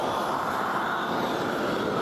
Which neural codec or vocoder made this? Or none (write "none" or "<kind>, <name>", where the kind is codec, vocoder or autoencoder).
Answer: none